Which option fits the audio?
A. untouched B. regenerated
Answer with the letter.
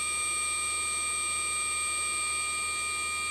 A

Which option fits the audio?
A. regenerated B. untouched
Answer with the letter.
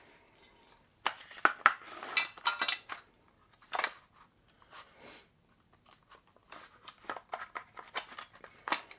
B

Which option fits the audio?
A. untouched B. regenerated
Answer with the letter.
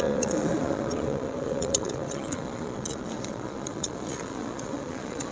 B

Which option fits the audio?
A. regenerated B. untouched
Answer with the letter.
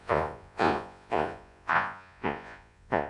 A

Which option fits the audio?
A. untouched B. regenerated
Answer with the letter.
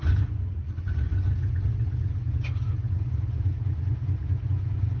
B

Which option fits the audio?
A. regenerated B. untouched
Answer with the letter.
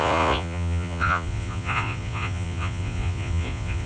A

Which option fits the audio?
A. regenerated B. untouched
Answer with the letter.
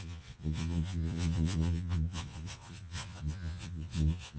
A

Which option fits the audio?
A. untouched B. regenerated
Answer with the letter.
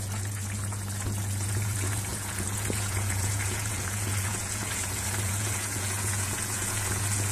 B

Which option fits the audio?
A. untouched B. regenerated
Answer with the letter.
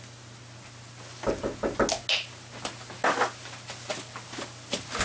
A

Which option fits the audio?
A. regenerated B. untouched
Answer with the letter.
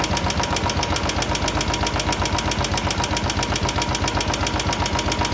B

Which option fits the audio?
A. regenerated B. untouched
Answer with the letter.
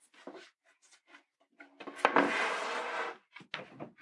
B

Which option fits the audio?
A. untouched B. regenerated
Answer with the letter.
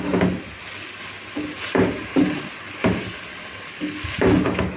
A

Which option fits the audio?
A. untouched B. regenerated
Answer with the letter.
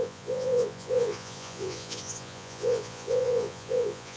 B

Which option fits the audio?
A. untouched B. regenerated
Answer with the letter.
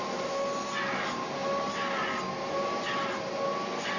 A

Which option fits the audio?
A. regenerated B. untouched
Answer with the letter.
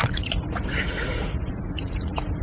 A